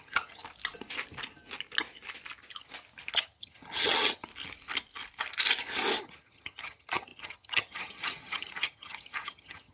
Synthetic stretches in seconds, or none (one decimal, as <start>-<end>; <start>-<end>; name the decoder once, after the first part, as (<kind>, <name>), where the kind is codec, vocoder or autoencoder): 0.0-0.4 (vocoder, HiFi-GAN); 3.2-4.3; 6.0-9.7